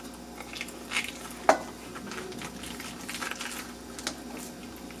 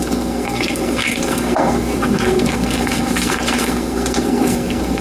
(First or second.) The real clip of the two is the first